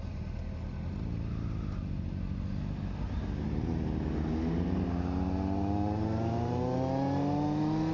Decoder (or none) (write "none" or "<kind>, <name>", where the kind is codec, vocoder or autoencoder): none